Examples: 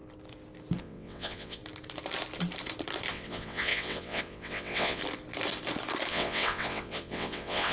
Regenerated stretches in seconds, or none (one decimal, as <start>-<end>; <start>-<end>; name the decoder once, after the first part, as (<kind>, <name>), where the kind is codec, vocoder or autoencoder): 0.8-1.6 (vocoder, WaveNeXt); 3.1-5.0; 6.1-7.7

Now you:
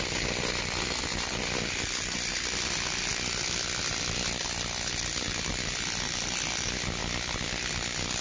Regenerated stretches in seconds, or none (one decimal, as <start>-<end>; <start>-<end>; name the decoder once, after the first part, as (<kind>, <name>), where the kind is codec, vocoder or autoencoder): none

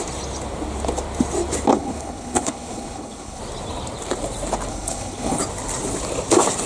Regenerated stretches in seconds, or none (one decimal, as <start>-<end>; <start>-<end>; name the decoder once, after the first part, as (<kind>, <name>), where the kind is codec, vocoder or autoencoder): 1.7-3.4 (codec, HILCodec); 4.7-5.4